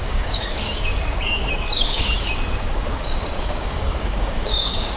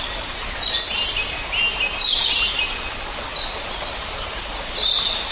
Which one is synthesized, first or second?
first